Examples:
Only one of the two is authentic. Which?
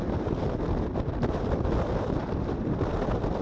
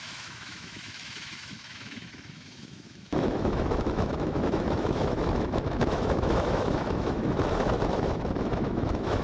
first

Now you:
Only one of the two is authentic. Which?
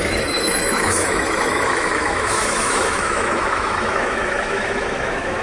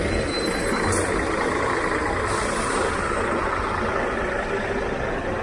second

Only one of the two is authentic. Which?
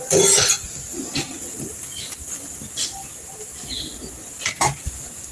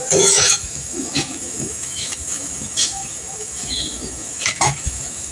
first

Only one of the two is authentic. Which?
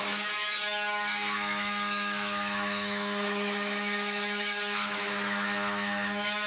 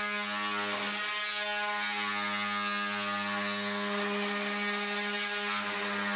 second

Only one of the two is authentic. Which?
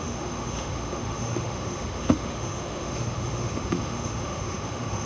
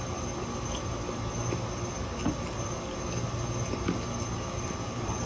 second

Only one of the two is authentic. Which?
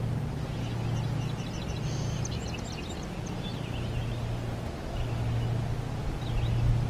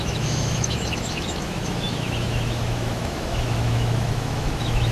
first